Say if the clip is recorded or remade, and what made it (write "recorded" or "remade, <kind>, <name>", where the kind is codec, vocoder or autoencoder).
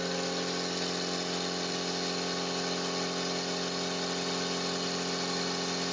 recorded